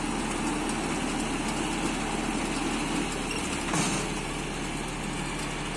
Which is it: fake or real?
real